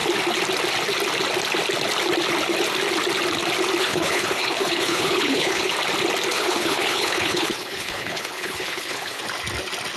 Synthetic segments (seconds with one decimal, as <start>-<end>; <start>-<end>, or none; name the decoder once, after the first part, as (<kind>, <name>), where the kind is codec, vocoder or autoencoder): 3.8-5.7 (codec, HILCodec); 6.3-9.2